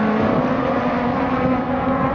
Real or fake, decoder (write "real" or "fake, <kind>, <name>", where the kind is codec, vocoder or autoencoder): real